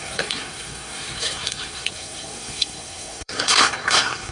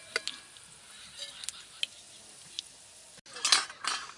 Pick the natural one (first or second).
second